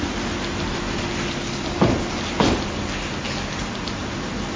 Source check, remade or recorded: recorded